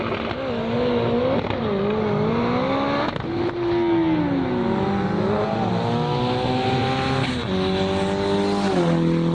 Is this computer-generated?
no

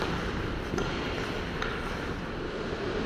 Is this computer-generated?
yes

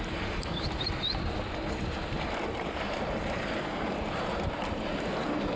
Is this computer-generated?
yes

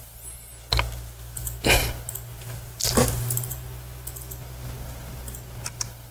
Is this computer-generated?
no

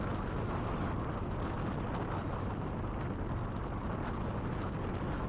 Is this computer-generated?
no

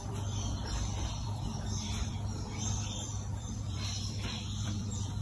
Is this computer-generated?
yes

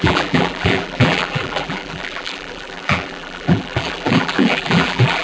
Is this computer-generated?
yes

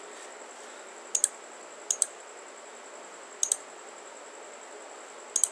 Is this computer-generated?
no